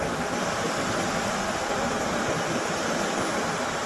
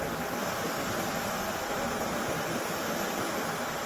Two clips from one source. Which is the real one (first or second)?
second